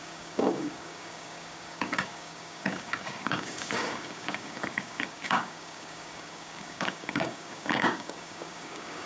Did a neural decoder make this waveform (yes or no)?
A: yes